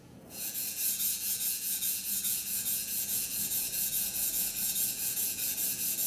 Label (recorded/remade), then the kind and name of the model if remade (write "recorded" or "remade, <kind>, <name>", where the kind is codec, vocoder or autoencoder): remade, vocoder, Vocos